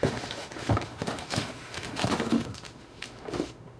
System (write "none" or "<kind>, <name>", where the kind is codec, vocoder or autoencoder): autoencoder, DAC-VAE